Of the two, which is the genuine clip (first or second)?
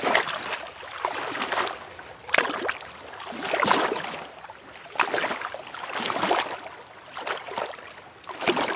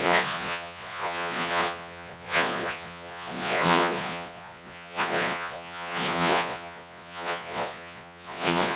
first